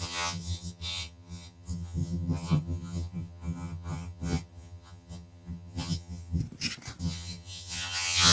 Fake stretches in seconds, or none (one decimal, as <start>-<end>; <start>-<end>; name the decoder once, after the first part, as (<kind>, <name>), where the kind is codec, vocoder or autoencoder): 0.0-6.4 (vocoder, HiFi-GAN); 7.0-8.3